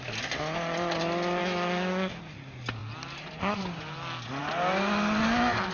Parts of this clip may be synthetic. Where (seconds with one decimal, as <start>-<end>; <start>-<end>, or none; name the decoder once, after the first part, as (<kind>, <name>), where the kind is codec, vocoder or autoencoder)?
1.4-2.2 (autoencoder, DAC-VAE)